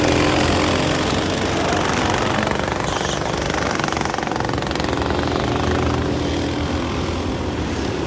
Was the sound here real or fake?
real